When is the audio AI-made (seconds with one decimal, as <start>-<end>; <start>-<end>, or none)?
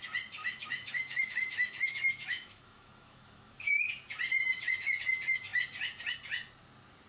0.4-3.9